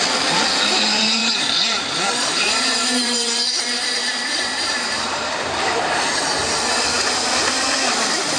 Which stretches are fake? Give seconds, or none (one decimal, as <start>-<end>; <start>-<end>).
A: 1.2-6.2